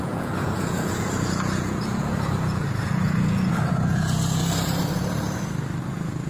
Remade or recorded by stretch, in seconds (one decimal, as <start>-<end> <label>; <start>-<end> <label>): 0.0-4.4 remade; 4.4-5.8 recorded; 5.8-6.3 remade